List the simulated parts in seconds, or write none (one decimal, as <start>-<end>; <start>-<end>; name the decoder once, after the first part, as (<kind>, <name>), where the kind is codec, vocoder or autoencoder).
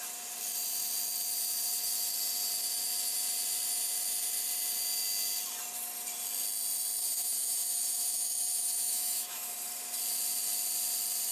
7.0-9.5 (autoencoder, DAC-VAE)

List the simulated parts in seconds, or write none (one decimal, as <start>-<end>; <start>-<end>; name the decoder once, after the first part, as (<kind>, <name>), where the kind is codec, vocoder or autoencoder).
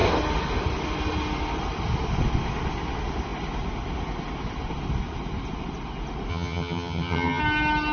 6.3-7.4 (vocoder, HiFi-GAN)